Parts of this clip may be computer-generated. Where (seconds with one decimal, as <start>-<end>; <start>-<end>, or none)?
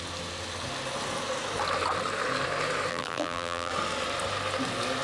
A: 2.9-3.7